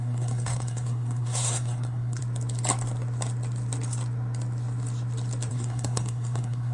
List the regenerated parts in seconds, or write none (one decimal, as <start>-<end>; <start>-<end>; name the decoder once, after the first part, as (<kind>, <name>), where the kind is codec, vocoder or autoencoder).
0.0-2.2 (codec, SNAC); 5.5-6.7